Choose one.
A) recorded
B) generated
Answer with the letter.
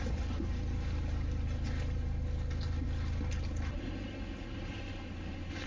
A